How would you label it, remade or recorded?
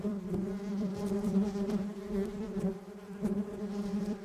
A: remade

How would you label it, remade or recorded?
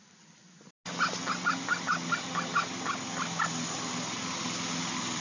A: recorded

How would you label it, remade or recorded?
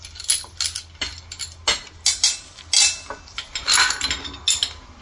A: recorded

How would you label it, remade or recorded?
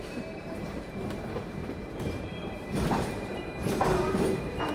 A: remade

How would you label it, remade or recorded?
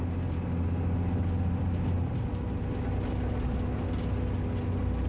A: recorded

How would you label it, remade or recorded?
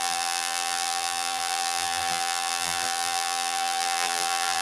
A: remade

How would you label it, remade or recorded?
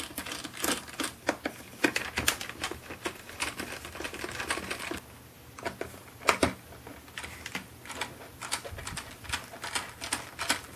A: recorded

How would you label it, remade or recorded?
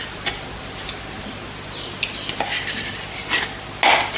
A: recorded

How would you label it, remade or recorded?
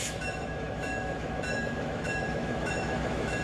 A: remade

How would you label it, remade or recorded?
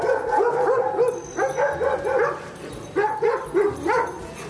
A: recorded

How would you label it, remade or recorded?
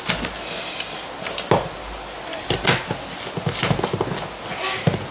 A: recorded